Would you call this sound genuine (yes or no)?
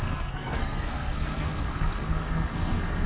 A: no